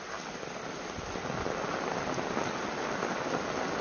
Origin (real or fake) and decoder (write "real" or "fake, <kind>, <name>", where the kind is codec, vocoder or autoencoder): real